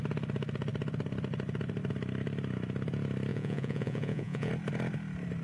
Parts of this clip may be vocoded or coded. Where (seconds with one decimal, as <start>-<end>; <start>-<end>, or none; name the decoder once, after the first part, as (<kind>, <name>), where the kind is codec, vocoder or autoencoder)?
3.3-4.5 (vocoder, Vocos)

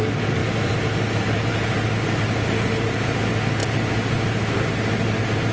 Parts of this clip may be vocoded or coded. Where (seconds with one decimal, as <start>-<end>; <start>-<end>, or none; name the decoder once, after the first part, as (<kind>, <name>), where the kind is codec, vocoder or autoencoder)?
none

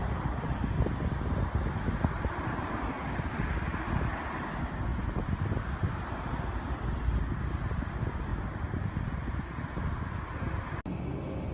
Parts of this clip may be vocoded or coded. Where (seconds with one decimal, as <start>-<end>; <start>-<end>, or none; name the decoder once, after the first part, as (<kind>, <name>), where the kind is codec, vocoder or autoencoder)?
none

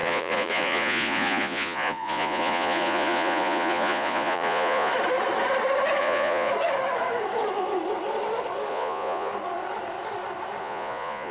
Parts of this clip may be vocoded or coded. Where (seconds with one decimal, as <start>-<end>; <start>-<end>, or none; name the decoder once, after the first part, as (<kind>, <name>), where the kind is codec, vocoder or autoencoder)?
0.0-4.9 (vocoder, Vocos); 6.0-6.5; 8.7-9.3; 10.6-11.3